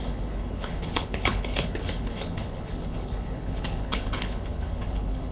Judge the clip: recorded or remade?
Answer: remade